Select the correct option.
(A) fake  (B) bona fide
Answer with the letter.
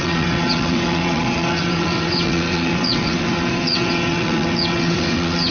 A